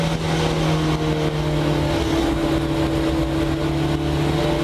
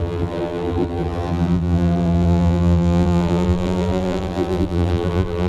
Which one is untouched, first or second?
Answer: first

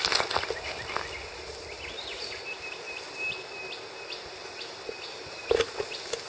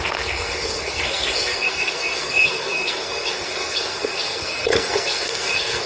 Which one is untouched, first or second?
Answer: first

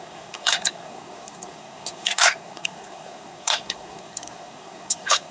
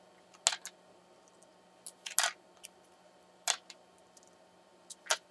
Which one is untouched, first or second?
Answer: second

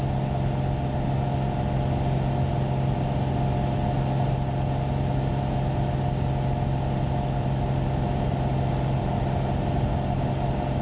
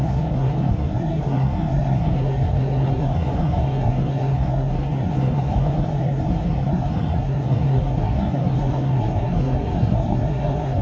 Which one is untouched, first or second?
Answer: first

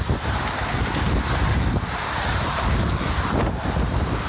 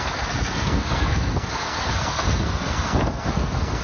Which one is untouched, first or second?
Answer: first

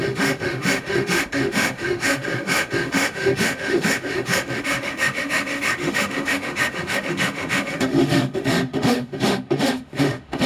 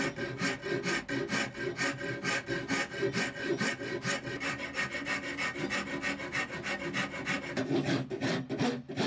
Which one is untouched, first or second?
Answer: second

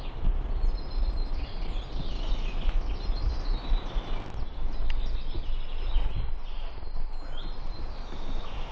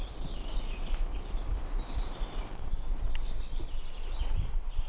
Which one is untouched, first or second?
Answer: first